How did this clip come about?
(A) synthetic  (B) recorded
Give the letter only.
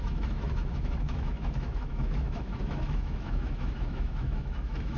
A